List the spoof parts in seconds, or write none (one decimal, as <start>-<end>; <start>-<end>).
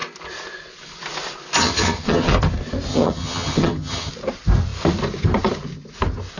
1.6-2.3; 2.9-4.1